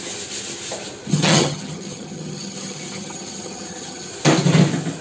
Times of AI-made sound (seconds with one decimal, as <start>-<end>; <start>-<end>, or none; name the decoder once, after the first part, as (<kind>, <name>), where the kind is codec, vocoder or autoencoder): 1.1-4.1 (vocoder, HiFi-GAN)